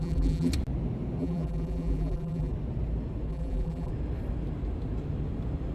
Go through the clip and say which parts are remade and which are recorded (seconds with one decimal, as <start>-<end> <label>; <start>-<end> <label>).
0.0-0.5 remade; 0.5-1.2 recorded; 1.2-2.5 remade; 2.5-3.3 recorded; 3.3-3.9 remade; 3.9-5.7 recorded

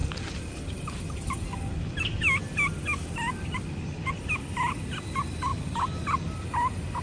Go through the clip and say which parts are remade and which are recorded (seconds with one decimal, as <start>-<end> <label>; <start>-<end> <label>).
0.0-7.0 recorded

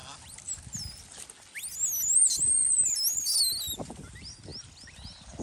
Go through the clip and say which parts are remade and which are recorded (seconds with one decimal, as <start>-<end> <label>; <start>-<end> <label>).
0.0-5.4 recorded

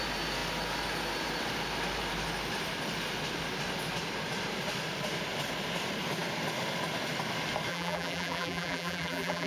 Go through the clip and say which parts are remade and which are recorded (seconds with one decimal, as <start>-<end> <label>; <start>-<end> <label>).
0.0-7.7 recorded; 7.7-9.5 remade

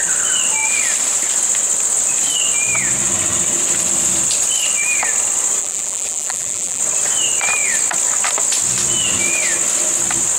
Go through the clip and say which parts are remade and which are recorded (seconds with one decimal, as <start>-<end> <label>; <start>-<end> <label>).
0.0-5.6 recorded; 5.6-6.8 remade; 6.8-10.4 recorded

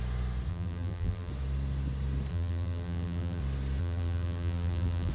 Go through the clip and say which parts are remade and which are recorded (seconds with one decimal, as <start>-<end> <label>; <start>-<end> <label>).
0.0-0.5 recorded; 0.5-1.3 remade; 1.3-2.3 recorded; 2.3-3.4 remade; 3.4-3.8 recorded; 3.8-5.1 remade

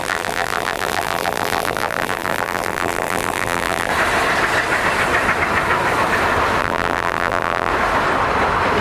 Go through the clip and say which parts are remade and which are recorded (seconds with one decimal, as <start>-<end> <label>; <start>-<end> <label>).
0.0-3.9 remade; 3.9-6.6 recorded; 6.6-7.7 remade; 7.7-8.8 recorded

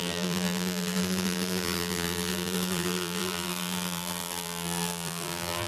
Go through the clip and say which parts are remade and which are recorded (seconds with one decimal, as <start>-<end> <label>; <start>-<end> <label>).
0.0-5.7 remade